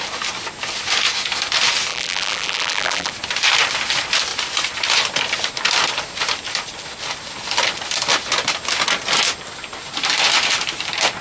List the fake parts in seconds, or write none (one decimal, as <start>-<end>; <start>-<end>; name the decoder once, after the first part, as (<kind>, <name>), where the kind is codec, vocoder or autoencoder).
1.9-3.1 (vocoder, BigVGAN v2)